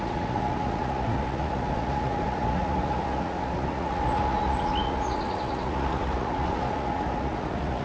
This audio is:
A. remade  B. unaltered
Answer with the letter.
A